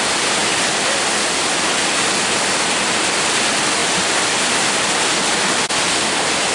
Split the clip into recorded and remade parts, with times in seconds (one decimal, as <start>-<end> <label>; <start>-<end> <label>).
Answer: 0.0-6.5 recorded